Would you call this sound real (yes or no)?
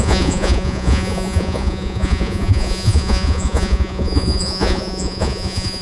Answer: no